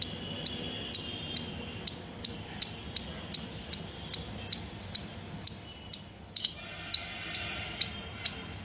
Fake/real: real